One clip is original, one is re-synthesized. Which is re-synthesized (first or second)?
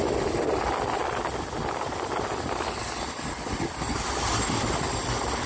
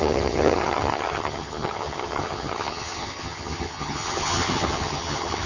second